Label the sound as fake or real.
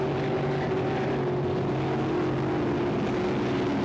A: real